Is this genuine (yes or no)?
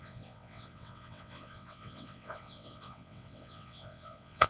no